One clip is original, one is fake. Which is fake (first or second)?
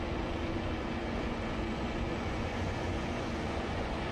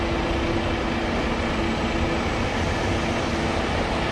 first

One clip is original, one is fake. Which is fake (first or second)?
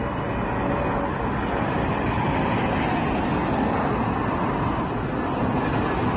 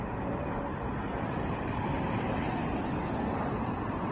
second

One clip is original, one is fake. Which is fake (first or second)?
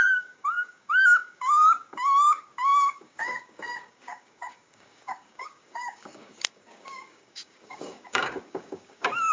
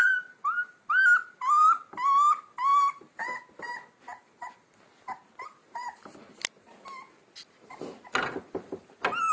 first